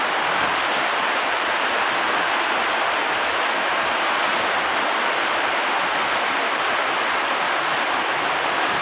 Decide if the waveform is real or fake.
real